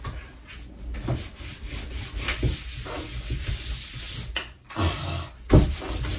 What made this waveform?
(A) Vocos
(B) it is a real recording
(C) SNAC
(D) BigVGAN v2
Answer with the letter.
B